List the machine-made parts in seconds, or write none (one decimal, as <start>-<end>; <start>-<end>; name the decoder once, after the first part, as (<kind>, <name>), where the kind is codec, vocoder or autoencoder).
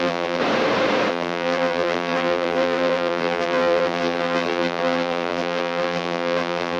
0.0-0.4 (vocoder, BigVGAN v2); 1.1-6.8